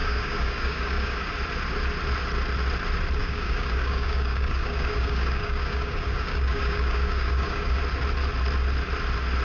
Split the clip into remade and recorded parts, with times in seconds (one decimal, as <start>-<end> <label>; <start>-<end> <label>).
0.0-1.3 remade; 1.3-3.2 recorded; 3.2-7.8 remade; 7.8-9.4 recorded